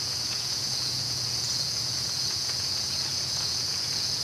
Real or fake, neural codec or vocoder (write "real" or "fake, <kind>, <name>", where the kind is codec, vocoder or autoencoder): fake, vocoder, Vocos